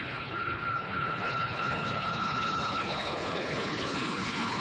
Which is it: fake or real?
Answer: fake